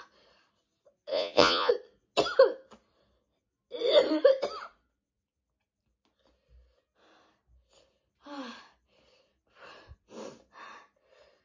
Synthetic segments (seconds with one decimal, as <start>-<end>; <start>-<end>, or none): 1.1-1.7